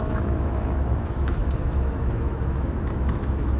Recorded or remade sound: remade